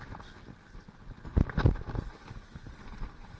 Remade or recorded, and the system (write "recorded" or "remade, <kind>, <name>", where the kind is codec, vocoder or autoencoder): recorded